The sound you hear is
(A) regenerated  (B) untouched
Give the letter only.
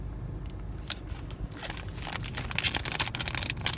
B